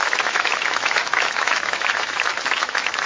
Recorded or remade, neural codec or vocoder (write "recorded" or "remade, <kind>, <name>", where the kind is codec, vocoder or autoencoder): remade, autoencoder, DAC-VAE